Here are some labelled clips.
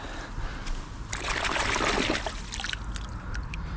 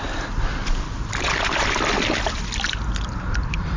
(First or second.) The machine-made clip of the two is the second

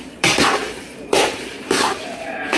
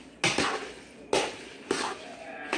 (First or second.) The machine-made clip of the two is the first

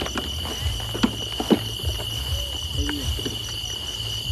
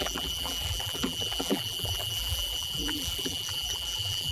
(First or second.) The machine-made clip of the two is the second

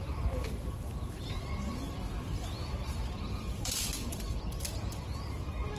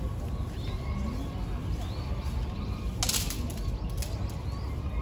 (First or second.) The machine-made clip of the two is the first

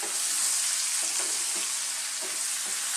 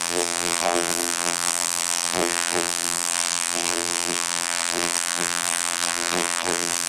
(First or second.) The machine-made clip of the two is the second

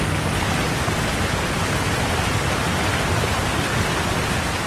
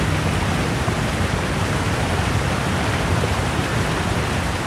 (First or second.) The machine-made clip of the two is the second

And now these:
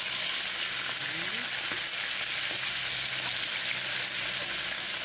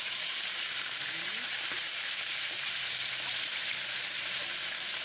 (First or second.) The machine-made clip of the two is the second